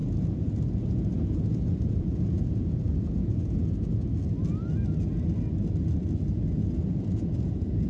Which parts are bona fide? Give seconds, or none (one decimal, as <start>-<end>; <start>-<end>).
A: 4.1-6.5